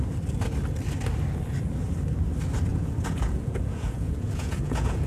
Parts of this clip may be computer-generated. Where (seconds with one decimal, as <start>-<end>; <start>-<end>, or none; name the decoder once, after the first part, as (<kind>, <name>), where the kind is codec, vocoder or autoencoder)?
2.7-5.1 (vocoder, Vocos)